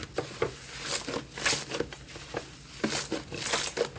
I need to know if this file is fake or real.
real